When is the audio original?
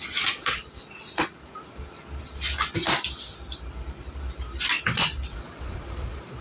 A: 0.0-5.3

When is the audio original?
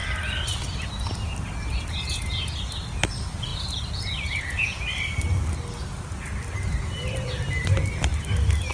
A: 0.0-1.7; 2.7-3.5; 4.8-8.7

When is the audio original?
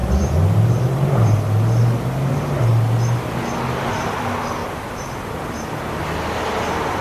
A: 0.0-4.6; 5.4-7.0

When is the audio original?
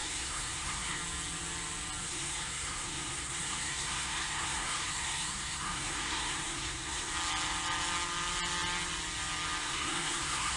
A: 1.0-2.0; 7.1-9.6